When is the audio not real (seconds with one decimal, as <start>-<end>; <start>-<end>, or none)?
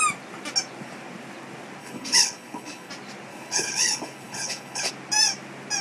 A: 1.8-2.9; 3.3-4.9